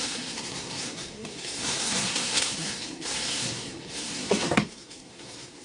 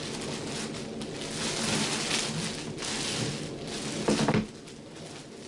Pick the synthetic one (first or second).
first